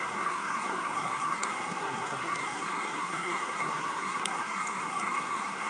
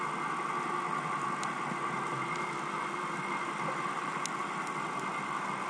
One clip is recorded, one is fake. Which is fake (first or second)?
first